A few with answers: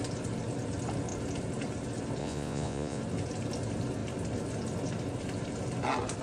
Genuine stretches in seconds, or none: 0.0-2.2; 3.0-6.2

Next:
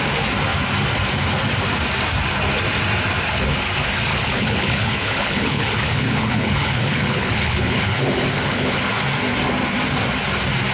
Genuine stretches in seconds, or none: 0.0-4.1; 8.8-10.7

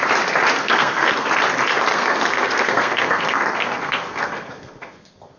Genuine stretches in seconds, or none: 0.0-0.6; 1.3-1.9

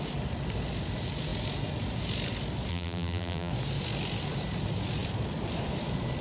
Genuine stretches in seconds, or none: 0.0-2.7; 3.5-6.2

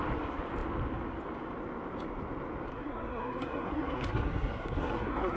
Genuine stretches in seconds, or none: 0.0-2.7

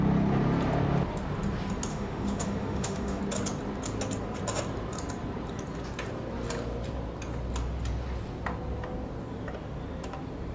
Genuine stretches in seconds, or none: 0.0-1.9; 3.2-10.5